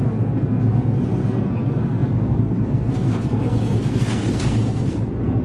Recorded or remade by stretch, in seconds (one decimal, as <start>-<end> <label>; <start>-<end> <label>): 0.0-5.4 remade